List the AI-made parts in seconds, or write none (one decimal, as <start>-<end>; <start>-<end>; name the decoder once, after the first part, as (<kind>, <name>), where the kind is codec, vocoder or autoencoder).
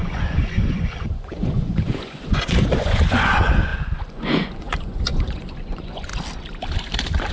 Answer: 0.0-6.1 (vocoder, Vocos)